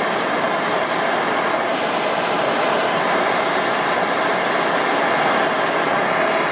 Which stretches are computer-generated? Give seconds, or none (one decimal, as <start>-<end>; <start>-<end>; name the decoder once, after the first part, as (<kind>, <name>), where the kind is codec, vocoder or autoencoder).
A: none